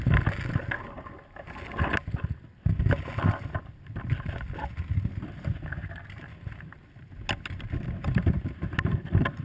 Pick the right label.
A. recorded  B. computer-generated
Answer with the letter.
A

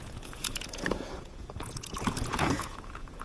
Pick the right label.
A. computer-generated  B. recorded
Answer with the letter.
A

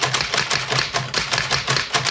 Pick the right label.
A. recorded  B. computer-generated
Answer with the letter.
A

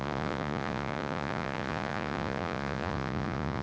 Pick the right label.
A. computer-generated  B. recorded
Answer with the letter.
A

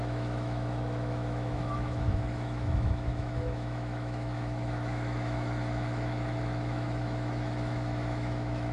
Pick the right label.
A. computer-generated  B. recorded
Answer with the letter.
A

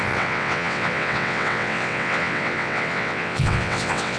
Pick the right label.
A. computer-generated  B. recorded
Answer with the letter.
A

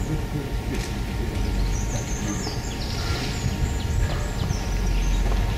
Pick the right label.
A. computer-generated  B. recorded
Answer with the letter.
B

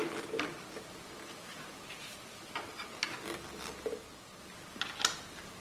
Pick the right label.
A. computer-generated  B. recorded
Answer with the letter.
B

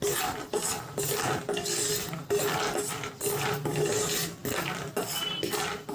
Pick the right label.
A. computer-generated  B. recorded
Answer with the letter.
B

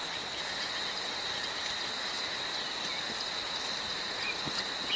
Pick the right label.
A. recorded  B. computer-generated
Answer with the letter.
A